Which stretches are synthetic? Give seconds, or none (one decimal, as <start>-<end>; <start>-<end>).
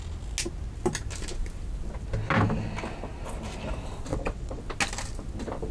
4.1-4.6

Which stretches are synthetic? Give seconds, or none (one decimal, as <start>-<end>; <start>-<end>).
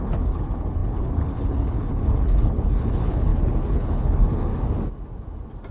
0.0-4.5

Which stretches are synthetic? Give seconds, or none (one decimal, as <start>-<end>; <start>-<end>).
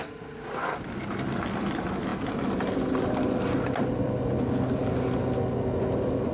none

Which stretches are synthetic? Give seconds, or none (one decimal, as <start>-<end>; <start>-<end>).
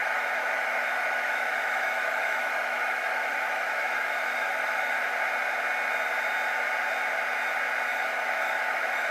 0.0-5.0; 7.9-9.1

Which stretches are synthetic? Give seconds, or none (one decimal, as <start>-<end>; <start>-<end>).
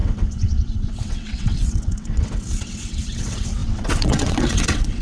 0.0-5.0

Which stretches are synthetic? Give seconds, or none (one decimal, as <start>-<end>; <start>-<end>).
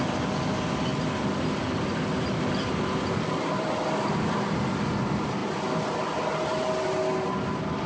0.9-4.5